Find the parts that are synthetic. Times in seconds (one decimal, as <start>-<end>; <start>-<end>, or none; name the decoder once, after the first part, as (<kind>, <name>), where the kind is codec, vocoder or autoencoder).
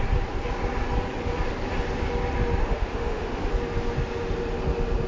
2.6-3.5 (autoencoder, DAC-VAE)